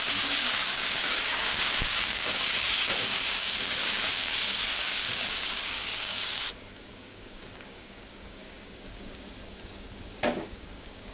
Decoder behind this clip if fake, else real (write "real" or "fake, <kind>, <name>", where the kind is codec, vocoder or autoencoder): fake, codec, DAC